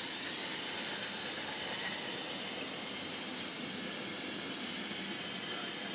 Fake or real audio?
real